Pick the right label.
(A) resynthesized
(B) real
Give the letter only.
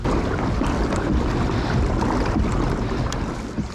B